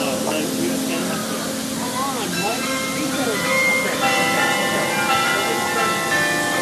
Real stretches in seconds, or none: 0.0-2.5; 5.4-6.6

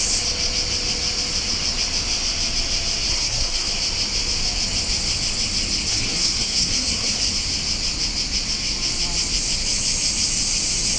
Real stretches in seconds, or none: 0.0-3.1; 3.7-5.9; 7.3-11.0

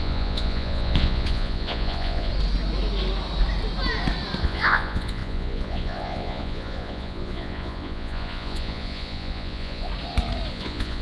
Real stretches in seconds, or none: 2.3-4.4; 9.9-10.5

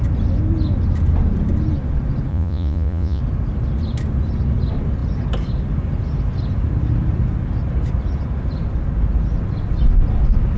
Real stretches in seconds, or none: 0.0-2.3; 3.2-10.6

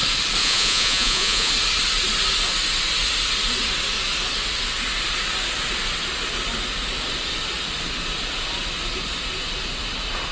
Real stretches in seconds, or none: 0.0-0.4; 1.5-10.3

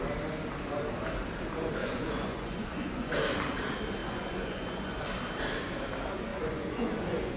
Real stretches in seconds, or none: 0.0-1.8; 3.1-4.0; 5.0-6.3

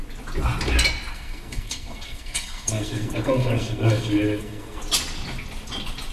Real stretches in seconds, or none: 0.0-1.1; 4.8-6.1